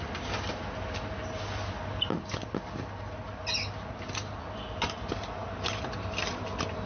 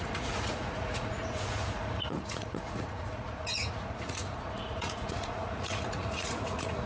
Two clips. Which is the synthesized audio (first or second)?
second